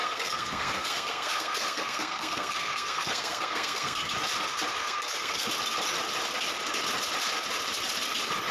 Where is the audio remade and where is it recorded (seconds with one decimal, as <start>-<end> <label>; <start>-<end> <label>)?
0.0-4.1 remade; 4.1-4.8 recorded; 4.8-5.5 remade; 5.5-8.5 recorded